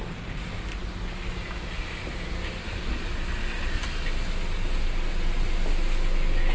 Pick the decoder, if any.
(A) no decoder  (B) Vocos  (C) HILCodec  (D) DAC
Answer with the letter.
A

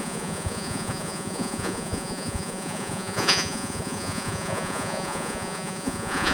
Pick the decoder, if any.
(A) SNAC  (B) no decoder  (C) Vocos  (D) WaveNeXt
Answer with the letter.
C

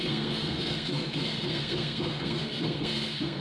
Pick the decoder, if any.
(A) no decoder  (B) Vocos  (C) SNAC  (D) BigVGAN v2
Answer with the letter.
C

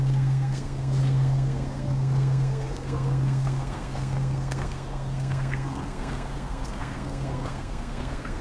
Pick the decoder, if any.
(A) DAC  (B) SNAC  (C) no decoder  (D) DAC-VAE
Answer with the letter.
B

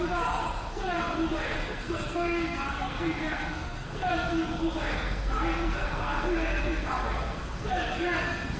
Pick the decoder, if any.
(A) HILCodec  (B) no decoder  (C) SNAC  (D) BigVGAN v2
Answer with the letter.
C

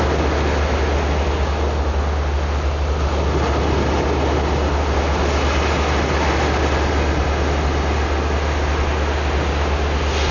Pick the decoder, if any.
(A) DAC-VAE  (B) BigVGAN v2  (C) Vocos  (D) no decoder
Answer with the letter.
D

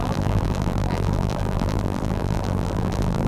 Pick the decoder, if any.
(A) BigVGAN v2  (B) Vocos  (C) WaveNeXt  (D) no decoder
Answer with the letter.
A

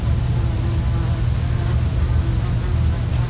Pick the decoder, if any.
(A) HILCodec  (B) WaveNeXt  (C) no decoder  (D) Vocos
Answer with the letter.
C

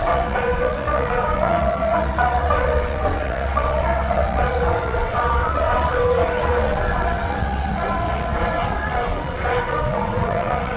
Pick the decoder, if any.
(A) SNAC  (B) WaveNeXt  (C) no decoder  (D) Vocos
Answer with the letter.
B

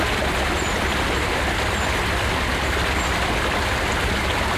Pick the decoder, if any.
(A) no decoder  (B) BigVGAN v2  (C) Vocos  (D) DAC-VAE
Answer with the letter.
A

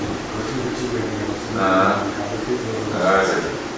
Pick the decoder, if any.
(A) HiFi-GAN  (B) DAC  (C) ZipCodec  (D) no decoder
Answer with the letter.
D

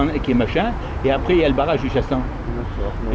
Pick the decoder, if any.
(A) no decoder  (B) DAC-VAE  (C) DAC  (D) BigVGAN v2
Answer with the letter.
A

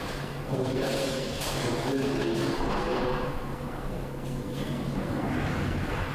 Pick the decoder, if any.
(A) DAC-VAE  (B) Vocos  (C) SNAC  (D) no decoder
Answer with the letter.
C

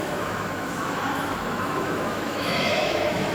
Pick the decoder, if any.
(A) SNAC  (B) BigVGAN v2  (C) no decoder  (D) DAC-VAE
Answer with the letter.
D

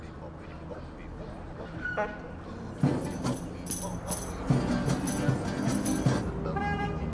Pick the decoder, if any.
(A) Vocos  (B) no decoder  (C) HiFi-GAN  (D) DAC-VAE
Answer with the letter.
B